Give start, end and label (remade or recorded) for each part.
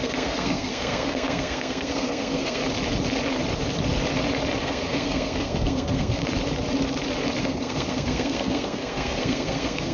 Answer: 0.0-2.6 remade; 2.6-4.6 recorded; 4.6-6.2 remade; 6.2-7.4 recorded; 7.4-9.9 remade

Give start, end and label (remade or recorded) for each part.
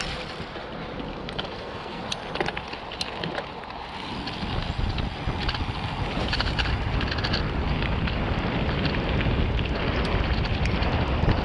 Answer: 0.0-1.1 recorded; 1.1-2.0 remade; 2.0-11.4 recorded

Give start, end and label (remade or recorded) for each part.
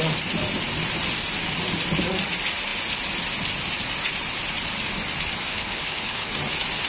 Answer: 0.0-5.5 recorded; 5.5-6.3 remade; 6.3-6.9 recorded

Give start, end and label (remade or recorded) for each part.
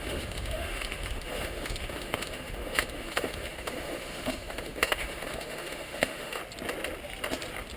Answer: 0.0-6.4 remade; 6.4-7.8 recorded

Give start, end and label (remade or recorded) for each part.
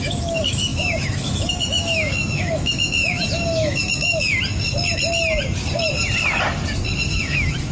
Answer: 0.0-4.3 remade; 4.3-7.1 recorded; 7.1-7.7 remade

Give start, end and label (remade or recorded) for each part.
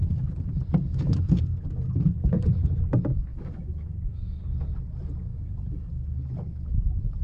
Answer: 0.0-0.9 recorded; 0.9-1.4 remade; 1.4-3.3 recorded; 3.3-4.4 remade; 4.4-5.3 recorded; 5.3-5.9 remade; 5.9-7.2 recorded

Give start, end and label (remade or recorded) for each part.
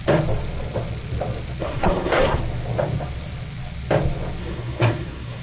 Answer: 0.0-1.6 recorded; 1.6-2.4 remade; 2.4-4.4 recorded; 4.4-5.4 remade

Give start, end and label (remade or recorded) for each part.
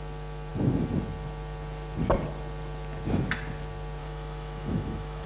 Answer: 0.0-4.0 recorded; 4.0-5.3 remade